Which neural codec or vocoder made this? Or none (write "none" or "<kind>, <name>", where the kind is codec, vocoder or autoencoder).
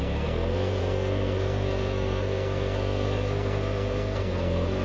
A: codec, SNAC